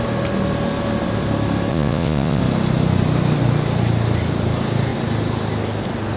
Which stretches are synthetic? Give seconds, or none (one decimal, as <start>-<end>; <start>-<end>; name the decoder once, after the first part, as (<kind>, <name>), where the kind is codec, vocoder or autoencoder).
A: 1.7-2.4 (vocoder, Vocos)